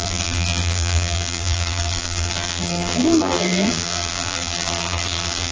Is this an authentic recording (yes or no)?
no